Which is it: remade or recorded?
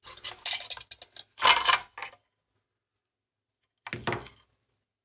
recorded